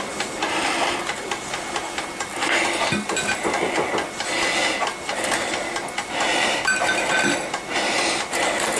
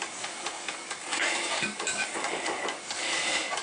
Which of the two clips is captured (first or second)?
first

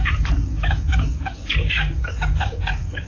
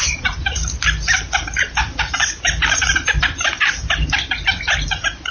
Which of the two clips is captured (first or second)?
second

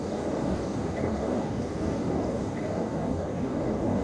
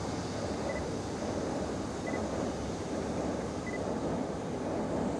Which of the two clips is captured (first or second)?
second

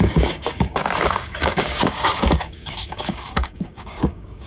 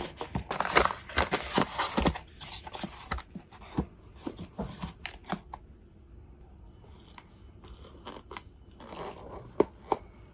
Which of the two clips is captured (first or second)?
second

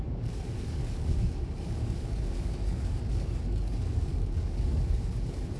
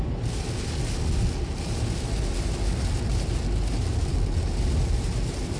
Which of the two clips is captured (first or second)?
second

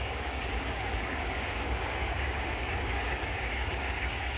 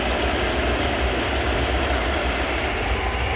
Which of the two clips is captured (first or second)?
second